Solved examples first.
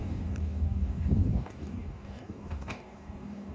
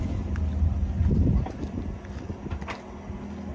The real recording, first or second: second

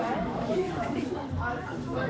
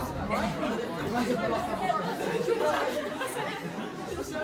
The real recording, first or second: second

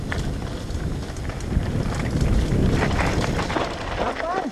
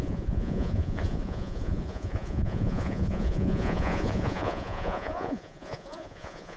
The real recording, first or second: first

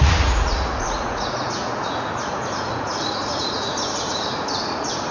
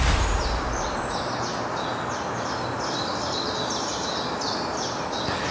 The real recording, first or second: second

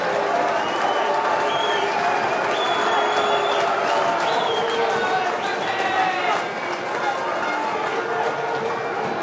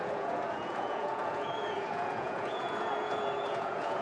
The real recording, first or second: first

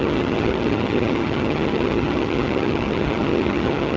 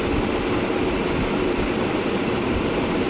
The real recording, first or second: second